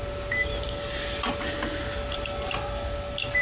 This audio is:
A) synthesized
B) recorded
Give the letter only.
B